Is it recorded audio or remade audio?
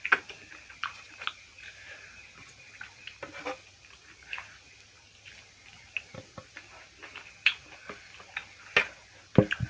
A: recorded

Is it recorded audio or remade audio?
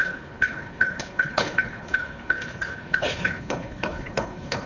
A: remade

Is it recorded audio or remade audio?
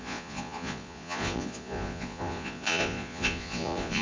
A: remade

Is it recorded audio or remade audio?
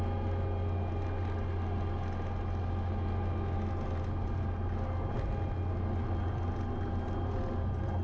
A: recorded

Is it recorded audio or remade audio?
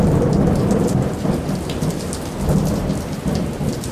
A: recorded